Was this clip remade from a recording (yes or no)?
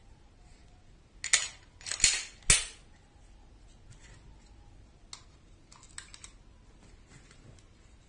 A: no